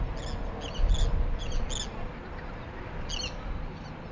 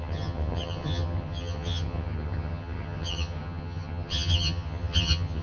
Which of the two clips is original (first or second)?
first